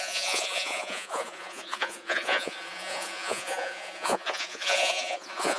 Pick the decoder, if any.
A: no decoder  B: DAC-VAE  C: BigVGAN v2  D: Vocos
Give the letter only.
D